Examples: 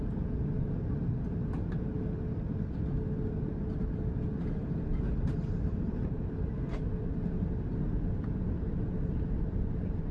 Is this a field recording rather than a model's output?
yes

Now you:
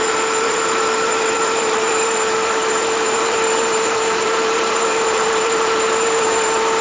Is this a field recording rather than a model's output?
no